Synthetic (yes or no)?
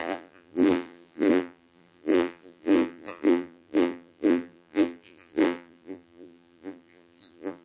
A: yes